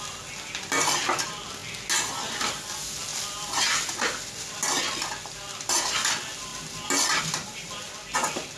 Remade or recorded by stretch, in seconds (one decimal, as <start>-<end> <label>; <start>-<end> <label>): 0.0-1.6 remade; 1.6-2.6 recorded; 2.6-3.1 remade; 3.1-5.1 recorded; 5.1-8.6 remade